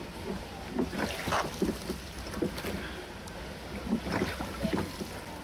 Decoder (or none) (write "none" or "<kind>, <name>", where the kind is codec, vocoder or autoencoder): none